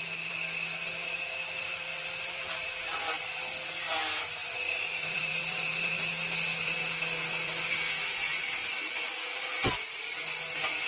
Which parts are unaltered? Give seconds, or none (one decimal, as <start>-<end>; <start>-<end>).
0.0-0.8; 2.8-4.4; 6.1-10.9